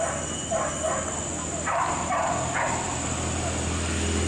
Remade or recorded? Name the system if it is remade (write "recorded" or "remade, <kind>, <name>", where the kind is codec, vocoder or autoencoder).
recorded